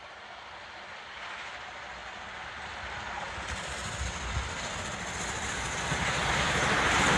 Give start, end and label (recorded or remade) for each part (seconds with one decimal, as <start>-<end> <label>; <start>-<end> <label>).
0.0-7.2 recorded